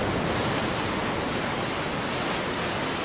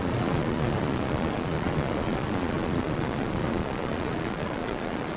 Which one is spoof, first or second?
second